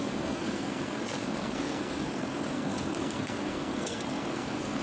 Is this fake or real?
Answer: fake